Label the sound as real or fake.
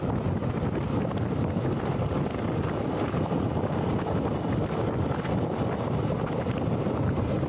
real